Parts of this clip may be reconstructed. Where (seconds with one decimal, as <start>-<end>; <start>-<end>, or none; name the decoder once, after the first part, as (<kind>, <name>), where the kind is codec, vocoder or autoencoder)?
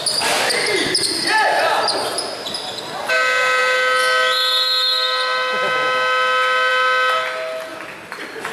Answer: none